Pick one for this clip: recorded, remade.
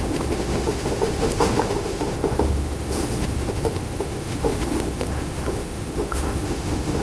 remade